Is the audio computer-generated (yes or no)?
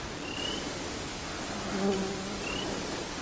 no